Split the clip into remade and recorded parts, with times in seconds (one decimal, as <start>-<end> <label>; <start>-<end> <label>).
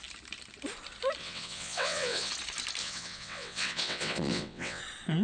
0.0-1.2 recorded; 1.2-2.3 remade; 2.3-2.8 recorded; 2.8-4.8 remade; 4.8-5.2 recorded